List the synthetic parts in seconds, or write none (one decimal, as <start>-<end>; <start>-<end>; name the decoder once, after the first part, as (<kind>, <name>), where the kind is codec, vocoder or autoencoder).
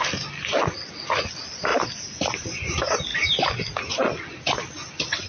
1.7-2.7 (vocoder, BigVGAN v2); 3.1-3.7